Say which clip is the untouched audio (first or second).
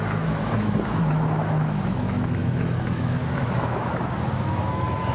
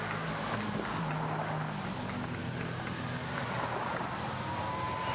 second